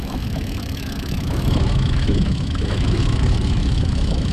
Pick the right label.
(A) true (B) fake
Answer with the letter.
B